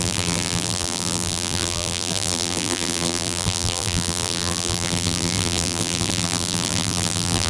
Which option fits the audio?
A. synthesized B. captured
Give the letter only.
A